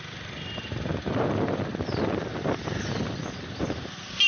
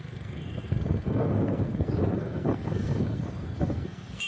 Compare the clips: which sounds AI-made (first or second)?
second